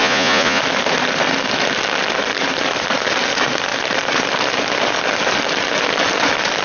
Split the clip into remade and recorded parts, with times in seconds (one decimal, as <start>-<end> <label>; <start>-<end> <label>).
0.0-0.6 remade; 0.6-6.6 recorded